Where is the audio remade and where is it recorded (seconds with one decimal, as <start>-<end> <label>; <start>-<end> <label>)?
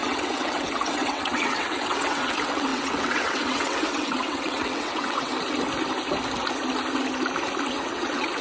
0.0-5.3 remade; 5.3-7.7 recorded; 7.7-8.4 remade